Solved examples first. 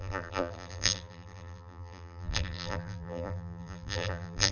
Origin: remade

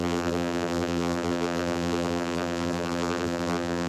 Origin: remade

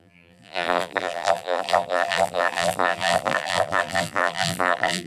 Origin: remade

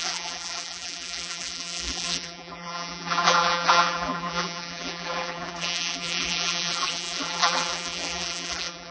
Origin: remade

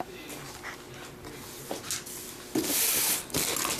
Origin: recorded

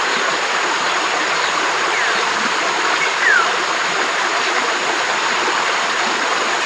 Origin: remade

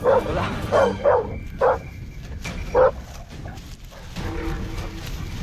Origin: recorded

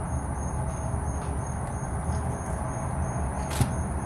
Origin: recorded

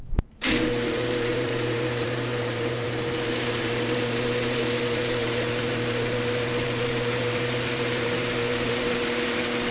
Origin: remade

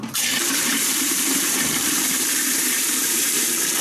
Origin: remade